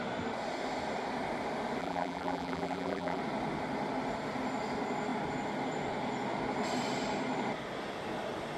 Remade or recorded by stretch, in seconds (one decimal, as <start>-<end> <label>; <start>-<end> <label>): 0.0-1.8 recorded; 1.8-3.2 remade; 3.2-8.6 recorded